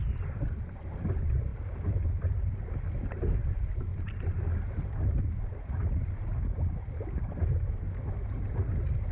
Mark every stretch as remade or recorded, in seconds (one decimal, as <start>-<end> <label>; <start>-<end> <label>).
0.0-9.1 recorded